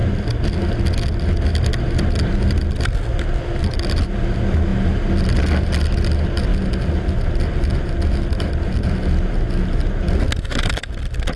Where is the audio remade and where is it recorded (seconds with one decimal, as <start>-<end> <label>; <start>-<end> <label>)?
0.0-11.4 recorded